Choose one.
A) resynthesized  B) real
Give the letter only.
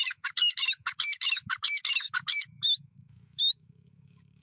A